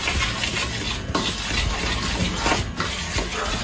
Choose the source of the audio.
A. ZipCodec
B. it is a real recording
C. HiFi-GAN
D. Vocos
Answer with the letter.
B